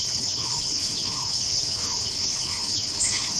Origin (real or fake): fake